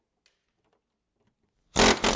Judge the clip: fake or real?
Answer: real